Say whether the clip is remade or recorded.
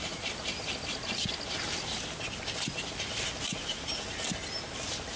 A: recorded